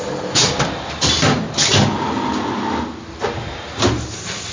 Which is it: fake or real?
real